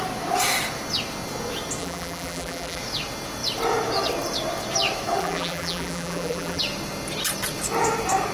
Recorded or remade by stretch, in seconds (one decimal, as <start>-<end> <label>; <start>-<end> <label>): 0.0-1.8 recorded; 1.8-2.8 remade; 2.8-5.2 recorded; 5.2-6.6 remade; 6.6-8.3 recorded